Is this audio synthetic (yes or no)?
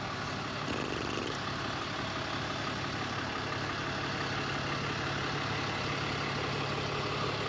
no